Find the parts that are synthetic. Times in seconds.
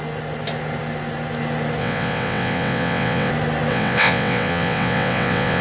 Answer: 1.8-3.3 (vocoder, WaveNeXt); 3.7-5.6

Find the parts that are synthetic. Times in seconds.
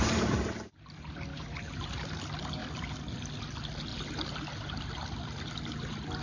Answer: 1.3-2.2 (vocoder, BigVGAN v2)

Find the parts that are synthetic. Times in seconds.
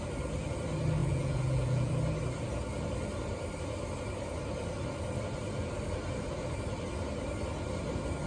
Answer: 1.0-1.9 (vocoder, Vocos)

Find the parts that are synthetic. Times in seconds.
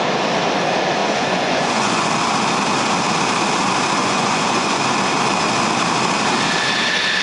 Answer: 1.0-2.1 (vocoder, Vocos); 4.0-4.8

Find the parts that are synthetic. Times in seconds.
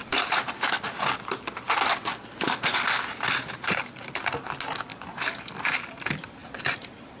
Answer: 0.0-0.7 (vocoder, BigVGAN v2); 6.4-7.2